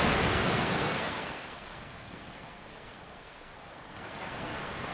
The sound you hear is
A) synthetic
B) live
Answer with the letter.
A